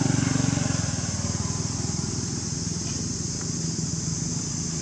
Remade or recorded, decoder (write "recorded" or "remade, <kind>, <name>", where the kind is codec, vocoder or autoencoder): recorded